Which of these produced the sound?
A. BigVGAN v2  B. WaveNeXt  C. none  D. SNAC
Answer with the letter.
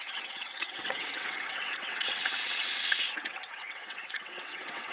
B